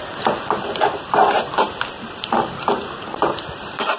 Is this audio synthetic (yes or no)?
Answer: yes